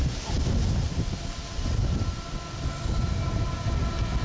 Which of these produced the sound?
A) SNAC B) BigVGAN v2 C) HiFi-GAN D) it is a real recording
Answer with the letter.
D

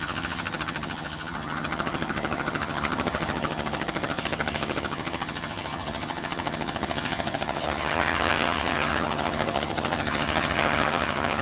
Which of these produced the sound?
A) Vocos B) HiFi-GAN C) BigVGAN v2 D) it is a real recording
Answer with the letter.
B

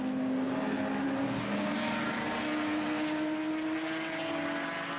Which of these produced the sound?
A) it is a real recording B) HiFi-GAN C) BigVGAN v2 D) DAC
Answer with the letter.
A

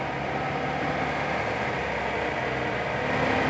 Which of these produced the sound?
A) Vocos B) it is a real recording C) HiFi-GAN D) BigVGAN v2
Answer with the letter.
B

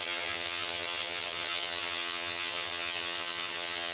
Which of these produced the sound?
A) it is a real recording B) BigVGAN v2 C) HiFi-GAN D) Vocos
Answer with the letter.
C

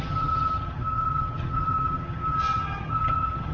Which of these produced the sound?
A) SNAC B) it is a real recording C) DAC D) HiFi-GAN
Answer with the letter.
D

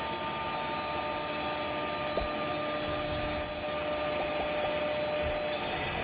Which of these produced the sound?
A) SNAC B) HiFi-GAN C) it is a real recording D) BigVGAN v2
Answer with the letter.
C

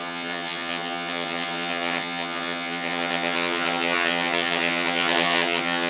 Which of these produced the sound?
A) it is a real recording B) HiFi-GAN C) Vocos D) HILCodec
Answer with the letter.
B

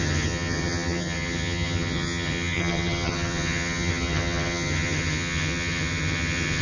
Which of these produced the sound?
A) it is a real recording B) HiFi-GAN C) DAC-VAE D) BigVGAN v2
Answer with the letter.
B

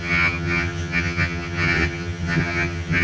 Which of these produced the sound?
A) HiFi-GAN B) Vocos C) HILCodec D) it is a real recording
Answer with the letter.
A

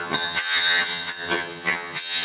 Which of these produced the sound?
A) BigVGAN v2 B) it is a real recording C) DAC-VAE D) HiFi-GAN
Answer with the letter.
D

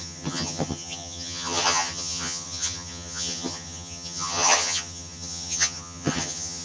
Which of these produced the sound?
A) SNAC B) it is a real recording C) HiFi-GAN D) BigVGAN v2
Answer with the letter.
C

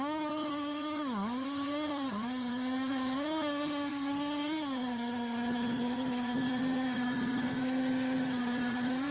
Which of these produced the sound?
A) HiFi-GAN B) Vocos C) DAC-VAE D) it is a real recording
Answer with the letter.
A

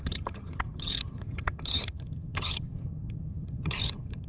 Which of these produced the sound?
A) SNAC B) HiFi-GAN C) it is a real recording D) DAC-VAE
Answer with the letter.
B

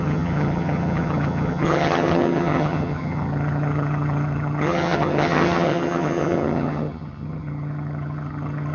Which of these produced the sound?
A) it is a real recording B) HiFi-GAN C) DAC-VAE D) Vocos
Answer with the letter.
B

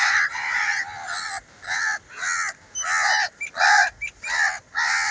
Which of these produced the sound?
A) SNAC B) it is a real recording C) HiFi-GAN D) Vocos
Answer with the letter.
B